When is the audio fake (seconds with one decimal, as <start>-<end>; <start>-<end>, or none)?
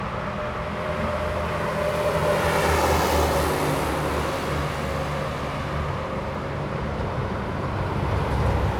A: 5.9-8.2